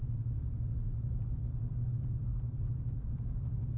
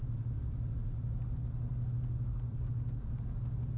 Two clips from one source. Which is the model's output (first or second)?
first